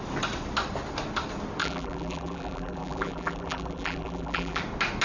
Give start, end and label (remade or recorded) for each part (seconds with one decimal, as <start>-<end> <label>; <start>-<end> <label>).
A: 0.0-1.6 recorded; 1.6-4.6 remade; 4.6-5.0 recorded